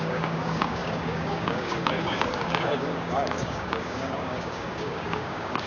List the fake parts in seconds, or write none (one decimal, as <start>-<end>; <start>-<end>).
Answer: 0.0-5.7